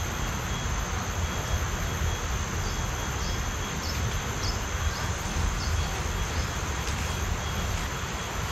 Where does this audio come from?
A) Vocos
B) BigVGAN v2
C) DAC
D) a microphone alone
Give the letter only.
D